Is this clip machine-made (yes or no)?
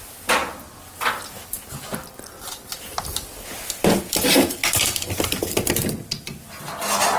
no